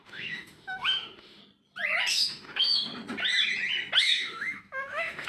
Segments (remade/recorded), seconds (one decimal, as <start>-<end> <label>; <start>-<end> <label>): 0.0-1.4 remade; 1.4-2.1 recorded; 2.1-2.9 remade; 2.9-4.0 recorded; 4.0-5.3 remade